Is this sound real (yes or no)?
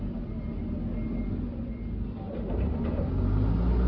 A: yes